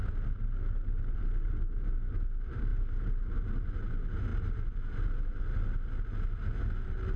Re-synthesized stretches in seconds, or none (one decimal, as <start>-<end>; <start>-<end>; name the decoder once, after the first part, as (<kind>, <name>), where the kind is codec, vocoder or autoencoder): none